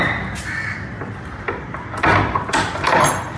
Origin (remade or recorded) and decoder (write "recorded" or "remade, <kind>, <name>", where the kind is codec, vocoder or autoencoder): recorded